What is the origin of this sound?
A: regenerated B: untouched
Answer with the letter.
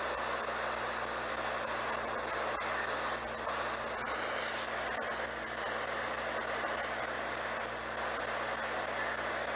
B